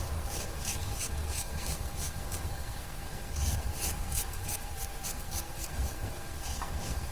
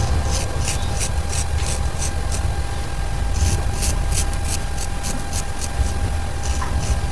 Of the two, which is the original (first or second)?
second